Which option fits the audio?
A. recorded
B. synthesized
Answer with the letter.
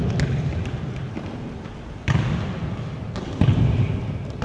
A